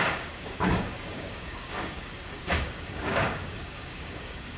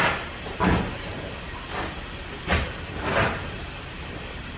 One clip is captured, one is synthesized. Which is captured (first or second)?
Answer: second